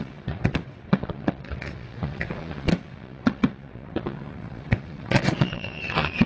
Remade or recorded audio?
remade